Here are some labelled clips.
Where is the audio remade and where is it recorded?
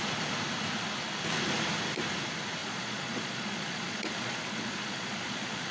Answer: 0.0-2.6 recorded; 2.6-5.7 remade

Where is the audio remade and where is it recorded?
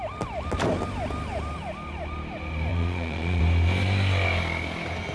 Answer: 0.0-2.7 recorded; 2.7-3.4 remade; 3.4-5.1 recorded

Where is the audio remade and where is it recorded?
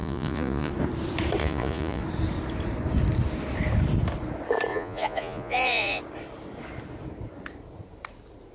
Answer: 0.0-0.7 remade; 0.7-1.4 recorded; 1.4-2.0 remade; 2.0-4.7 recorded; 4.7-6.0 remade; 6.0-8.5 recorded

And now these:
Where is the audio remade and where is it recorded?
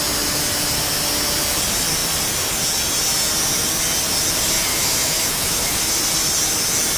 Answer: 0.0-4.7 recorded; 4.7-5.8 remade; 5.8-7.0 recorded